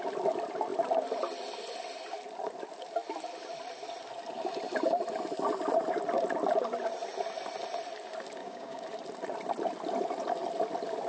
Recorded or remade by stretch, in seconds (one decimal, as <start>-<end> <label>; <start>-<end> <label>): 0.0-8.4 recorded; 8.4-8.9 remade; 8.9-11.1 recorded